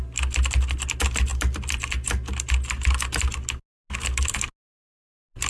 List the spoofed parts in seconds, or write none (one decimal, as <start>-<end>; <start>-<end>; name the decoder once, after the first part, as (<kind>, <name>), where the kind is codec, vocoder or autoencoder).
none